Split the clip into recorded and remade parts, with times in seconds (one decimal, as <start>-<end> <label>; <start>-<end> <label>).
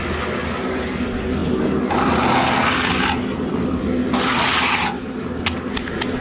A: 0.0-6.2 recorded